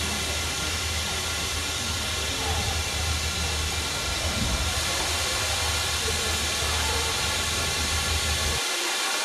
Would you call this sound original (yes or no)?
yes